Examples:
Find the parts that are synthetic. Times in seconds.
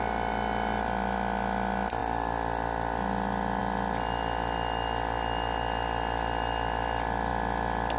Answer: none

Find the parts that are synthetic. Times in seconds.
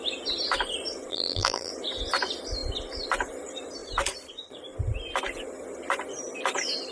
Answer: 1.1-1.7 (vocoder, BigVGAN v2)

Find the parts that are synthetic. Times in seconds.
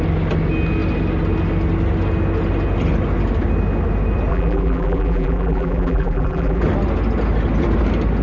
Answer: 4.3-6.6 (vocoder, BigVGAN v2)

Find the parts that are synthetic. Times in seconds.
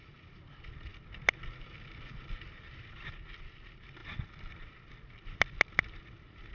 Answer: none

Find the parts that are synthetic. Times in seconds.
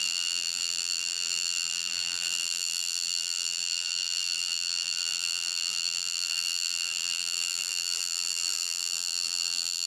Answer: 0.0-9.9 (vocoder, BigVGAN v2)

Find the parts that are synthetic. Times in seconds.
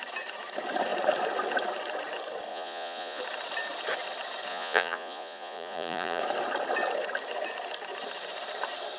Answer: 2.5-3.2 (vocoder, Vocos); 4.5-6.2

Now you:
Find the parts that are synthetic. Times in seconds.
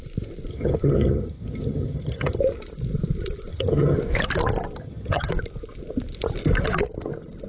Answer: 0.5-2.4 (vocoder, HiFi-GAN); 3.5-4.0; 4.8-5.3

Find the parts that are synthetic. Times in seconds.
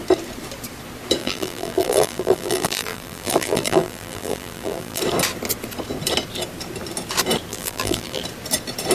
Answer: 1.2-5.0 (vocoder, BigVGAN v2); 7.5-8.2